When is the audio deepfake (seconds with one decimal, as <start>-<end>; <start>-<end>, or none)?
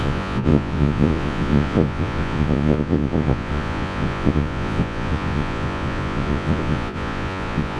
0.0-7.8